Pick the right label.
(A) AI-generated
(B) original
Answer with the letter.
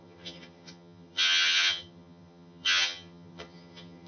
A